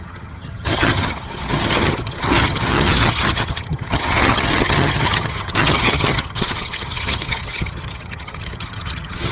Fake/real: fake